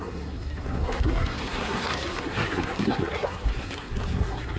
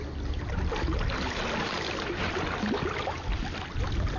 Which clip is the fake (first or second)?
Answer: first